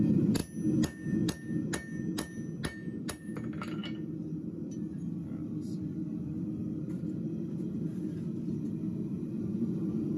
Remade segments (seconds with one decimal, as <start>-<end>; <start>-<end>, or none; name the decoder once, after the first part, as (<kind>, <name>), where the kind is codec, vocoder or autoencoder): 0.0-0.4 (vocoder, BigVGAN v2); 3.0-3.8; 4.7-6.6; 9.4-10.2